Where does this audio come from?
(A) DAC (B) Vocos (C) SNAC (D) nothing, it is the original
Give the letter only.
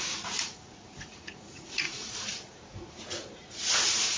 B